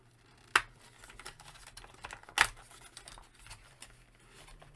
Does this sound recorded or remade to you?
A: recorded